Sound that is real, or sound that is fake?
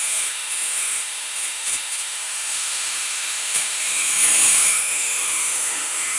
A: fake